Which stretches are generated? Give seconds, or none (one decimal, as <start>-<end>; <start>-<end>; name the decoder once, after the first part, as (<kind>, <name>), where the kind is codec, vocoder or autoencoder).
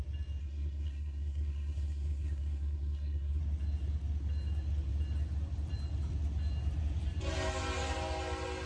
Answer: 0.4-3.4 (codec, SNAC)